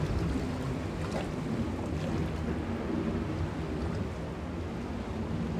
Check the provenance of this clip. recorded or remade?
recorded